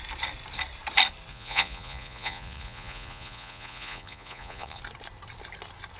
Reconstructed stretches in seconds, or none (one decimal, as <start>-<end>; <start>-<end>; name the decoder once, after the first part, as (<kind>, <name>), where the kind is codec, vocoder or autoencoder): 1.3-4.8 (vocoder, Vocos)